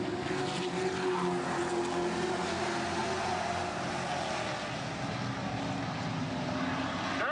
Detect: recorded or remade recorded